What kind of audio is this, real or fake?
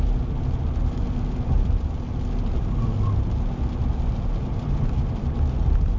real